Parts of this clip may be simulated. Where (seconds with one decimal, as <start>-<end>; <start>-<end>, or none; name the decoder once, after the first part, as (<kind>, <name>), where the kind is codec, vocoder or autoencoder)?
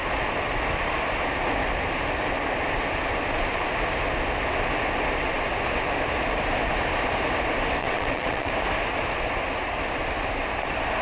7.8-8.5 (vocoder, WaveNeXt)